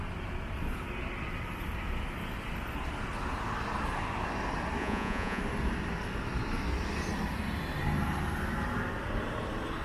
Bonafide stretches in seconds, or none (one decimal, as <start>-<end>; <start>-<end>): 0.0-4.8; 5.4-9.8